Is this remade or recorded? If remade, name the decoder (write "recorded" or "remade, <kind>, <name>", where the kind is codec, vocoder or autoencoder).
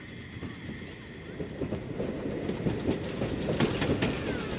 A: recorded